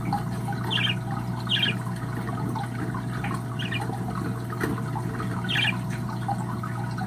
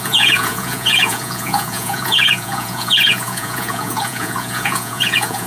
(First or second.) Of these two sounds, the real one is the first